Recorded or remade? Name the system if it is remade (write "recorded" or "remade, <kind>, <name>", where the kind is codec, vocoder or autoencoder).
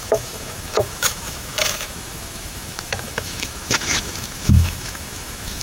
remade, autoencoder, DAC-VAE